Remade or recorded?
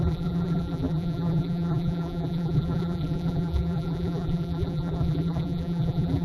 remade